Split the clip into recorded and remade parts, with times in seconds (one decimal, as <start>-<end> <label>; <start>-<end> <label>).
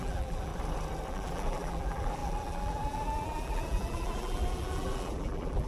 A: 0.0-0.5 remade; 0.5-1.1 recorded; 1.1-5.7 remade